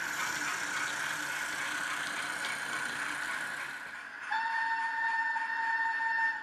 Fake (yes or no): no